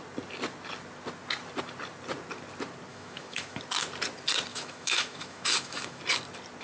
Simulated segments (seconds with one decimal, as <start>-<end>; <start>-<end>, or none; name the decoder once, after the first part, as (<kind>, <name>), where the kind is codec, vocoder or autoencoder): 2.9-3.6 (autoencoder, DAC-VAE); 4.5-6.0